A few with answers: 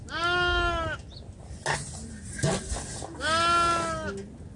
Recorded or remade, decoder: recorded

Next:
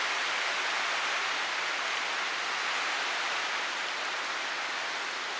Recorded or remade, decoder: recorded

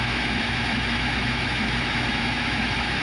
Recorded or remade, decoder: remade, autoencoder, DAC-VAE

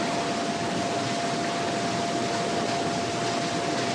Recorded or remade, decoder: recorded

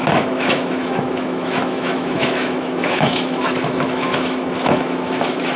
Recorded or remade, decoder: remade, autoencoder, DAC-VAE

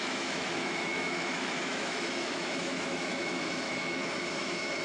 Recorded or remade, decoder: remade, autoencoder, DAC-VAE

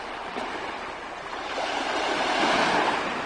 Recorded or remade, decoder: recorded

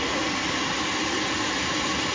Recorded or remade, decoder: recorded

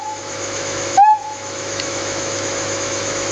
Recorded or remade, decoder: remade, autoencoder, DAC-VAE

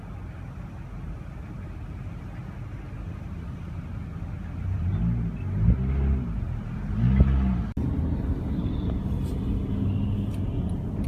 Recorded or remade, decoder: recorded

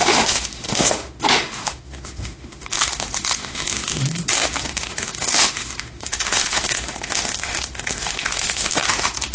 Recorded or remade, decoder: remade, autoencoder, DAC-VAE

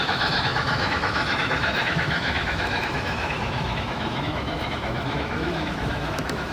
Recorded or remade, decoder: remade, autoencoder, DAC-VAE